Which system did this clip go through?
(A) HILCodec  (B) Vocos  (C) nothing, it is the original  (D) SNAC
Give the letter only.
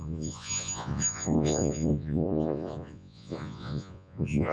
B